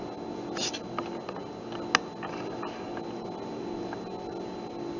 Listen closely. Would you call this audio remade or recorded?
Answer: recorded